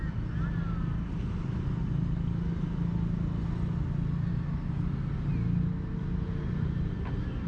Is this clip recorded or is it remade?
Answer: recorded